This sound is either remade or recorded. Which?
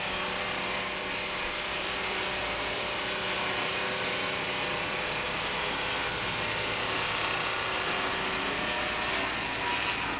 recorded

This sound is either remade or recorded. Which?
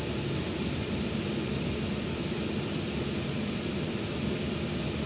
recorded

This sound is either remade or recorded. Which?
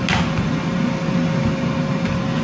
recorded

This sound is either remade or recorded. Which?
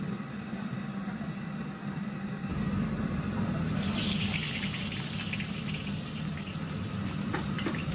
recorded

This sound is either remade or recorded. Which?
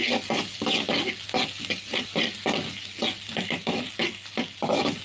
recorded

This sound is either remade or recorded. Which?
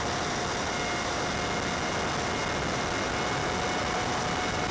recorded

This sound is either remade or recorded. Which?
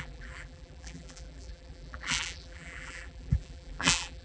remade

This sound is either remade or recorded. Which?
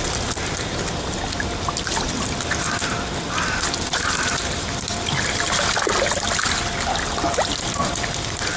recorded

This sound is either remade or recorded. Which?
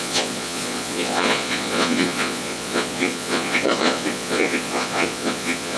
remade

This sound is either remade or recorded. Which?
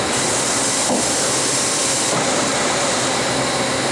recorded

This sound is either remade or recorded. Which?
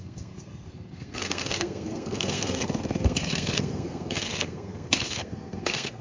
remade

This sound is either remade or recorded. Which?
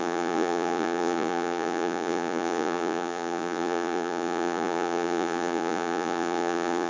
remade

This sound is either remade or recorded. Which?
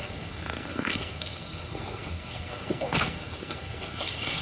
remade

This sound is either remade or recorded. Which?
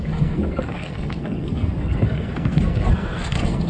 remade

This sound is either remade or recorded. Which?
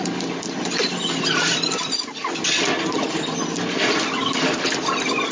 recorded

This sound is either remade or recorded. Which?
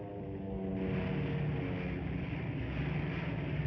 recorded